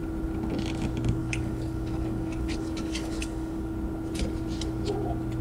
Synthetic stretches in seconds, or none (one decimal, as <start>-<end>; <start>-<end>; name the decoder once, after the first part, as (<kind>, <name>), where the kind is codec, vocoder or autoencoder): 1.2-3.7 (codec, DAC)